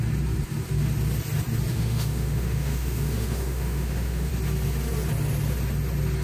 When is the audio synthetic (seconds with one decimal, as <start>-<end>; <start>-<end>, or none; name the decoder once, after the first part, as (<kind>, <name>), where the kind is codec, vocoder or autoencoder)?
1.7-4.3 (autoencoder, DAC-VAE)